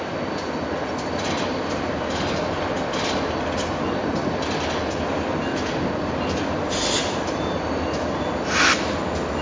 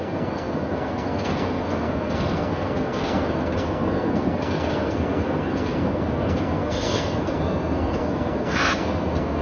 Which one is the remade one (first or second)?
second